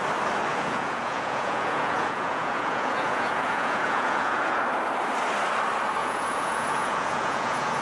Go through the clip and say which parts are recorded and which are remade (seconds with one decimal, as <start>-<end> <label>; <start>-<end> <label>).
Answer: 0.0-0.5 recorded; 0.5-4.6 remade; 4.6-6.0 recorded; 6.0-7.8 remade